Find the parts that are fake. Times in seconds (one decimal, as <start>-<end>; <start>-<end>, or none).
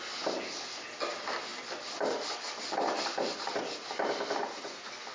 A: none